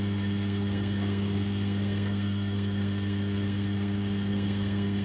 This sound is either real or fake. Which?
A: fake